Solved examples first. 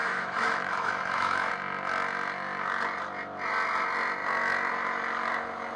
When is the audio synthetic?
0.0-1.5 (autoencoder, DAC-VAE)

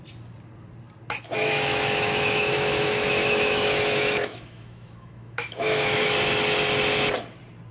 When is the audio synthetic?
1.4-6.0 (autoencoder, DAC-VAE)

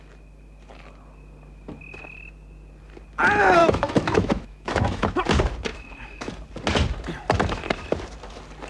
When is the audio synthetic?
3.6-5.1 (autoencoder, DAC-VAE); 5.7-6.3

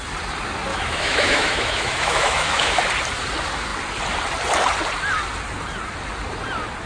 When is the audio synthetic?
0.7-2.8 (autoencoder, DAC-VAE)

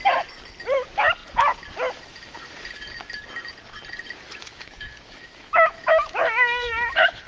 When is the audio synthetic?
4.4-7.3 (autoencoder, DAC-VAE)

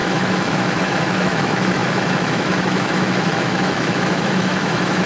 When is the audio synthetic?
0.0-5.1 (autoencoder, DAC-VAE)